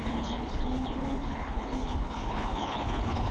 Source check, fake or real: fake